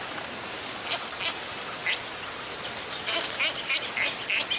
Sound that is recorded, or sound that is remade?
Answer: recorded